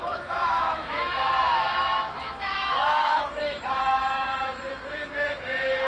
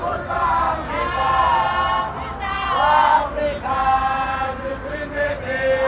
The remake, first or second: first